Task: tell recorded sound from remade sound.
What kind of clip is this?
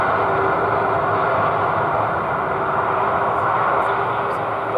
recorded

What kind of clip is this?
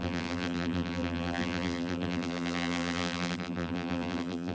remade